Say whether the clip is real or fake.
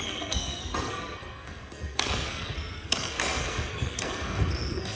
fake